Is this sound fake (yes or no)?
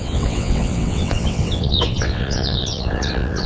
yes